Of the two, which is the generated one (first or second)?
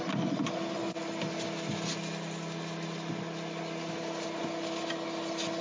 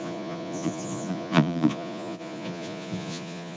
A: second